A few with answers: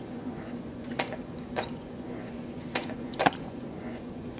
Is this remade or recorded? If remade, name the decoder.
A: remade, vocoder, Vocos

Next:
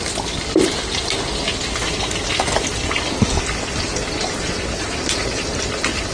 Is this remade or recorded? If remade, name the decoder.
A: recorded